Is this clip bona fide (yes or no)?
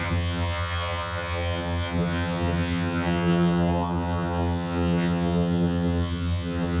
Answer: no